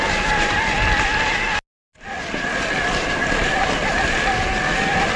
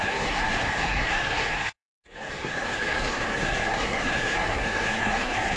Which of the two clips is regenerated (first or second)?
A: second